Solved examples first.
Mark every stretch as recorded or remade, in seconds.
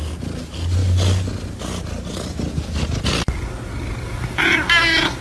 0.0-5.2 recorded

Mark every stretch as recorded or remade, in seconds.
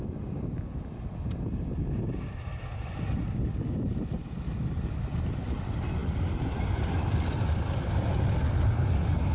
0.0-9.3 recorded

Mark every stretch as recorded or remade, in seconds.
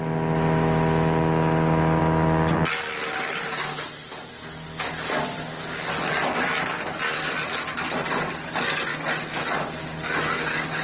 0.0-10.8 recorded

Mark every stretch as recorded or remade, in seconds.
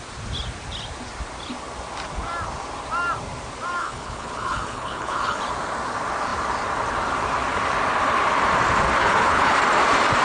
0.0-3.8 recorded; 3.8-5.4 remade; 5.4-9.0 recorded; 9.0-9.6 remade; 9.6-10.2 recorded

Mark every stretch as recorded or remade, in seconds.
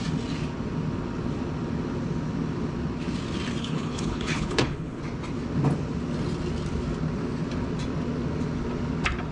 0.0-3.6 recorded; 3.6-5.0 remade; 5.0-9.3 recorded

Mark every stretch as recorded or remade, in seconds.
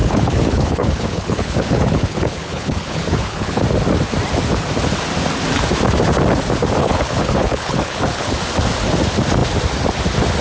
0.0-3.6 remade; 3.6-6.8 recorded; 6.8-8.3 remade; 8.3-10.4 recorded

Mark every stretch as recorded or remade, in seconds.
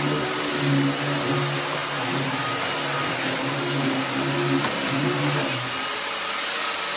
0.0-7.0 recorded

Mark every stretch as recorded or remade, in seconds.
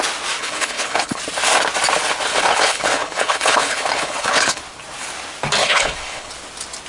0.0-0.4 recorded; 0.4-1.2 remade; 1.2-2.3 recorded; 2.3-4.6 remade; 4.6-5.6 recorded; 5.6-6.3 remade; 6.3-6.9 recorded